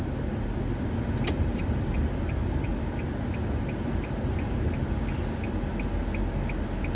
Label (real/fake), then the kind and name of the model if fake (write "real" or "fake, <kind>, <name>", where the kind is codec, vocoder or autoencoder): real